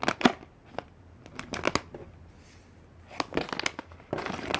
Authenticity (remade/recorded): recorded